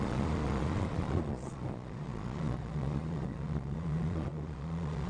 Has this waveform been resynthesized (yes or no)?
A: yes